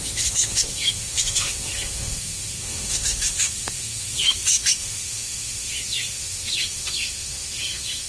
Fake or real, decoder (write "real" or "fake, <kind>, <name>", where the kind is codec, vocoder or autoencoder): fake, autoencoder, DAC-VAE